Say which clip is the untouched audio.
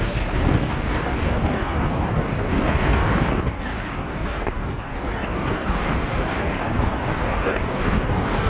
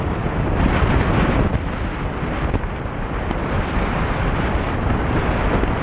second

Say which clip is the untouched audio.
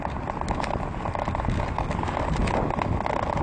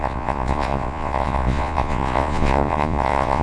first